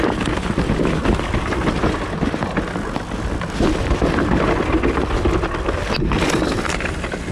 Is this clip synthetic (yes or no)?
no